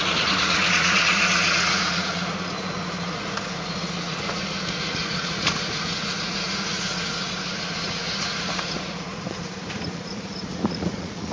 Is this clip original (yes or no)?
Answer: no